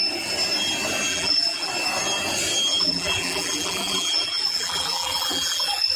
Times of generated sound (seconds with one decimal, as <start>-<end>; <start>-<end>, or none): 1.1-1.7; 2.7-6.0